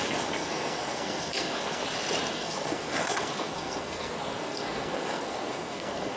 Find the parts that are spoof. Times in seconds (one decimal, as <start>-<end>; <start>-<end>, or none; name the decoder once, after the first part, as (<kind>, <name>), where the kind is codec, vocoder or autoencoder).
0.0-1.8 (codec, SNAC); 2.3-6.2